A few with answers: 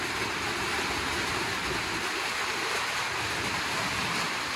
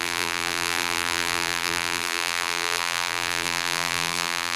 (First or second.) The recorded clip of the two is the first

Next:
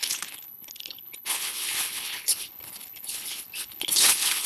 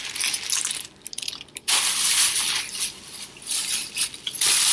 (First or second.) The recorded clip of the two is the second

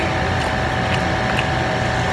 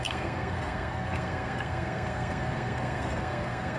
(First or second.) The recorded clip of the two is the first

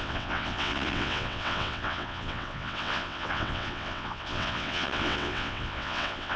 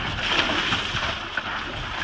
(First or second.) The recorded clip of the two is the second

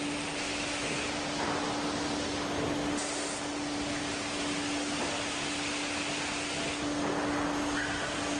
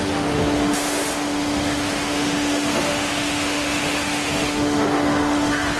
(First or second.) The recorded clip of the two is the first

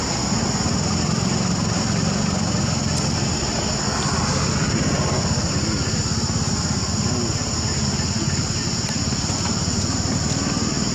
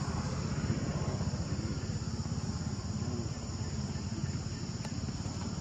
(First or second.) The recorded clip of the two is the first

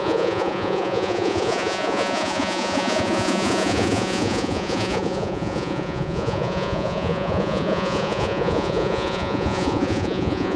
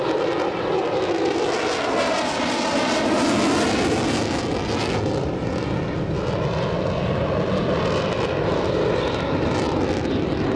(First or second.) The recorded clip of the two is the second